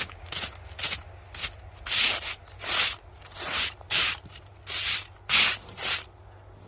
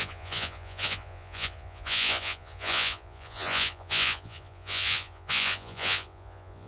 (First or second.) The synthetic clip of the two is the second